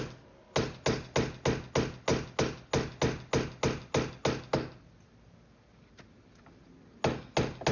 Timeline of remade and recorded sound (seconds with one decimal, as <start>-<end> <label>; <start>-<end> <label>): 0.0-7.7 recorded